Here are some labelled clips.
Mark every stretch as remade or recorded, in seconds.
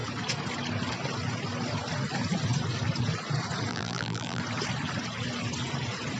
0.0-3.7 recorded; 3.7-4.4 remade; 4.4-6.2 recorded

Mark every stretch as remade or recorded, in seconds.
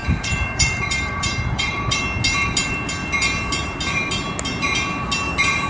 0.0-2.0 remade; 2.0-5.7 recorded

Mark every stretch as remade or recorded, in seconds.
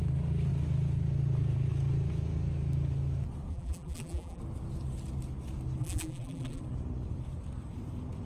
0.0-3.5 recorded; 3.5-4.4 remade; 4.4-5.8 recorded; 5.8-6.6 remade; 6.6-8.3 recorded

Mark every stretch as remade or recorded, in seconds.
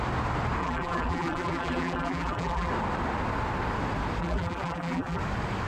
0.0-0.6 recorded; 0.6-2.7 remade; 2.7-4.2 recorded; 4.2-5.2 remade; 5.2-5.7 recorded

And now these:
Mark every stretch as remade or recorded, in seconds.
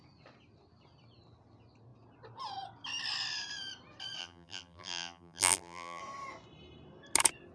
0.0-4.2 recorded; 4.2-6.0 remade; 6.0-7.5 recorded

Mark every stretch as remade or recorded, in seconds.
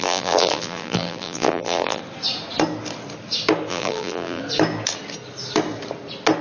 0.0-2.0 remade; 2.0-3.7 recorded; 3.7-4.4 remade; 4.4-6.4 recorded